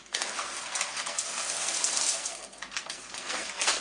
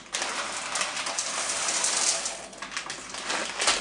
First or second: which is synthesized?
first